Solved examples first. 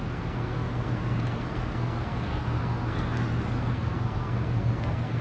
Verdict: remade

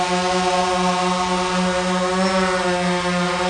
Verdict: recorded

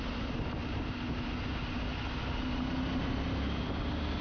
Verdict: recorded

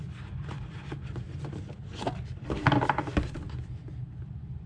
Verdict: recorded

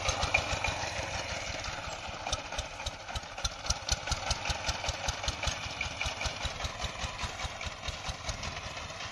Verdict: recorded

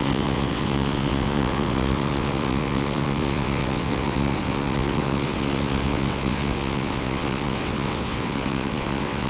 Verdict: remade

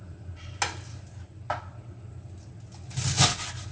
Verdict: recorded